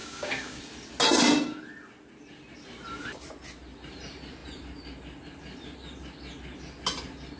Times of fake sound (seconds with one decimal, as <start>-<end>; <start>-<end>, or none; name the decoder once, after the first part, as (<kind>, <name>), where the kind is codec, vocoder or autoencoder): 0.0-0.6 (codec, DAC)